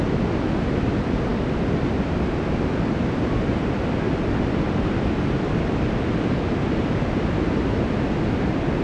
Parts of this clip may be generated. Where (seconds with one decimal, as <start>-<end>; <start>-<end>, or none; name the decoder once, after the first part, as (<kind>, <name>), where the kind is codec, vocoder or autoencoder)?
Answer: none